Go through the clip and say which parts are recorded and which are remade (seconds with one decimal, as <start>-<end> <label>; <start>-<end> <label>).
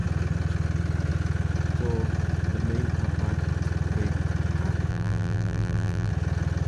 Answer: 0.0-4.9 recorded; 4.9-6.1 remade; 6.1-6.7 recorded